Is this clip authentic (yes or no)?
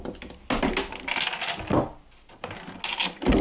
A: yes